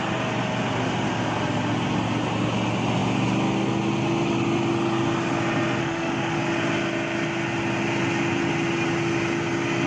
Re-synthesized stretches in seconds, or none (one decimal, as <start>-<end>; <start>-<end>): 5.8-6.4